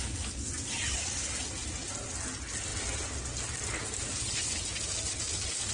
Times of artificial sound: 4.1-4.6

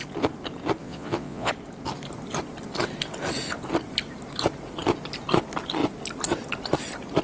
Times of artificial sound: 0.8-1.5

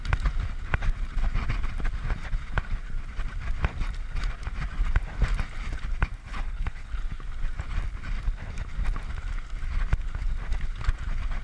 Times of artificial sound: 6.2-7.0

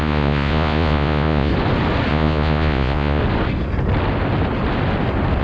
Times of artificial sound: 0.0-1.5; 2.1-3.2

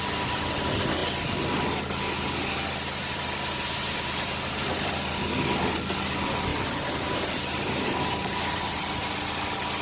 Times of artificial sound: 3.0-5.1; 6.5-9.1

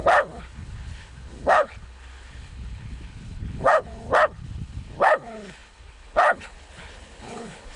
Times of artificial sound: 0.0-7.8